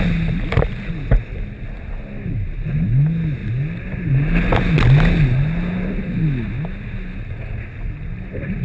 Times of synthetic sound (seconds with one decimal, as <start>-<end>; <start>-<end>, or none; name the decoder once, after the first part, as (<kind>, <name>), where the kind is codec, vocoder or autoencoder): none